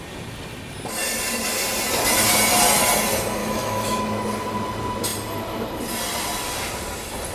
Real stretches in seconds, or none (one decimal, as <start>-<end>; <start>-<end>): 0.0-3.4; 4.0-7.3

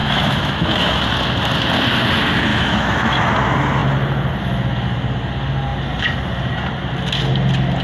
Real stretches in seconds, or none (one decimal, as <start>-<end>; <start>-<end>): 1.0-2.5; 3.3-7.8